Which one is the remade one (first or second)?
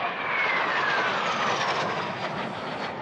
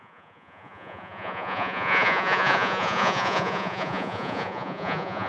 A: second